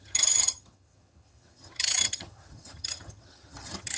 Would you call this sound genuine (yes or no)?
no